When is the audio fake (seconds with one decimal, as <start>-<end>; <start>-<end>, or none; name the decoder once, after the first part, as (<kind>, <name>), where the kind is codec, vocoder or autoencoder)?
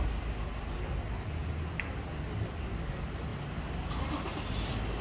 none